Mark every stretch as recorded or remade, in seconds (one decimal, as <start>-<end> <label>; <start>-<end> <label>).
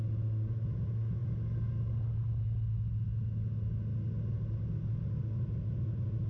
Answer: 0.0-6.3 recorded